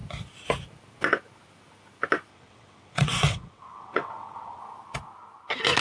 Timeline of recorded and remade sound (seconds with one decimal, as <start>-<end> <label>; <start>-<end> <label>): 0.0-2.3 recorded; 2.3-4.6 remade; 4.6-5.8 recorded